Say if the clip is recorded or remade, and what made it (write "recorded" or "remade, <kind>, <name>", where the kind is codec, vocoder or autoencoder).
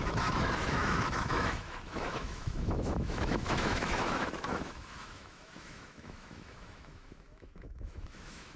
remade, autoencoder, DAC-VAE